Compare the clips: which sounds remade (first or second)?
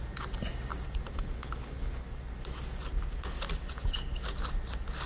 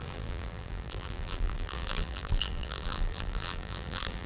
second